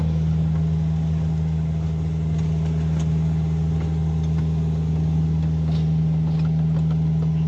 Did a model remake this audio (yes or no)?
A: no